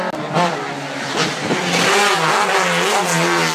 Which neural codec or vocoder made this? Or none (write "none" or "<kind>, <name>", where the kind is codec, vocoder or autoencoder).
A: none